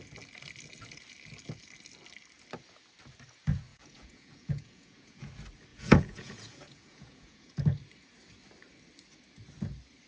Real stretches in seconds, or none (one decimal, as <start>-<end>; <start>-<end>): 0.0-3.7; 5.3-5.7; 7.5-10.1